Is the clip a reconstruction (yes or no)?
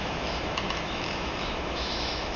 yes